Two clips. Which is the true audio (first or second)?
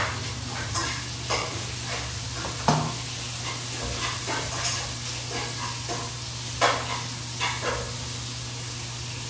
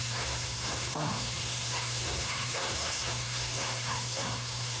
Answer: first